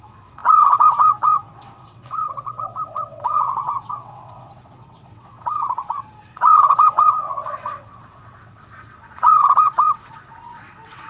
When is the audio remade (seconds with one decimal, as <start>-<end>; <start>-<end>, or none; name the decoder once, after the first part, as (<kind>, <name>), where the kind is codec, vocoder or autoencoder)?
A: 0.0-11.1 (vocoder, WaveNeXt)